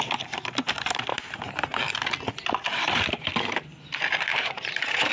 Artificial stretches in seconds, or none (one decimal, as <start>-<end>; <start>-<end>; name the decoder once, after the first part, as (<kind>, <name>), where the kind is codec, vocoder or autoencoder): 1.1-1.9 (vocoder, BigVGAN v2); 4.3-5.1